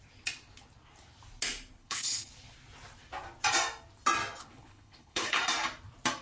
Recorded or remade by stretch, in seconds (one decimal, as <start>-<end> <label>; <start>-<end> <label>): 0.0-1.8 recorded; 1.8-2.3 remade; 2.3-4.4 recorded; 4.4-5.4 remade; 5.4-6.2 recorded